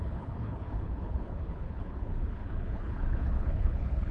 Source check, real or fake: fake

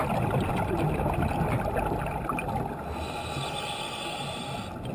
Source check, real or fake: real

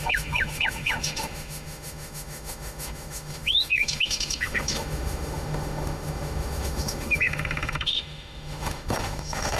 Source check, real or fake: fake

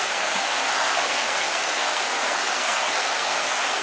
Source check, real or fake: fake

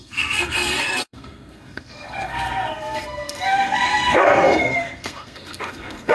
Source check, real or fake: fake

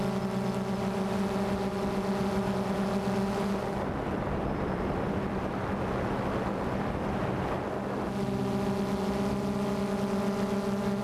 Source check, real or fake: real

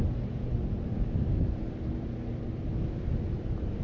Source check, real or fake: real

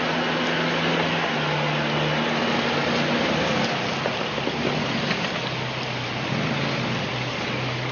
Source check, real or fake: real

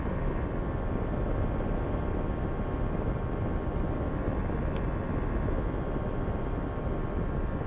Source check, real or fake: real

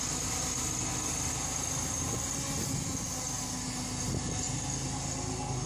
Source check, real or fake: real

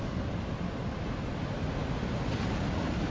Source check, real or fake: real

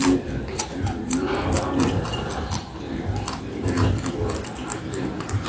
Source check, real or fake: fake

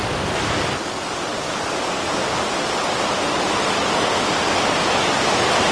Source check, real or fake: real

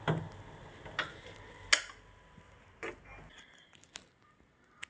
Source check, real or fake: real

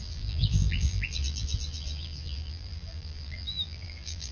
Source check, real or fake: fake